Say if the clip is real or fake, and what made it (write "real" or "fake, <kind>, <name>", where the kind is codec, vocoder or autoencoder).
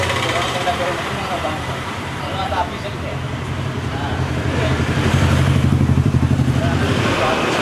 fake, vocoder, BigVGAN v2